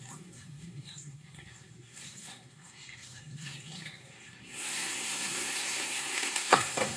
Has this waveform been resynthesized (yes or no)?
yes